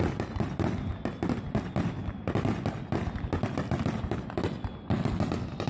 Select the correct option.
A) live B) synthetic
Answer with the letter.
A